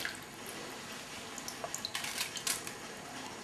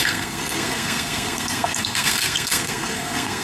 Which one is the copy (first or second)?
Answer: second